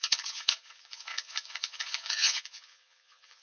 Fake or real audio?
fake